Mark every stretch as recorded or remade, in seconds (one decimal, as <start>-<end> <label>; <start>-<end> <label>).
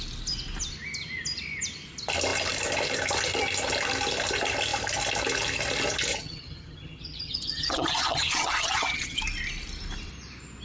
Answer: 0.0-6.1 recorded; 6.1-9.2 remade; 9.2-10.6 recorded